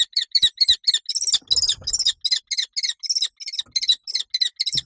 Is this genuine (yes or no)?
yes